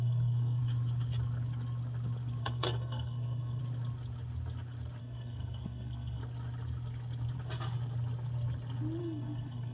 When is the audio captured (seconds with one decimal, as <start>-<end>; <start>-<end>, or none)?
0.6-2.4; 3.6-5.0; 6.2-9.0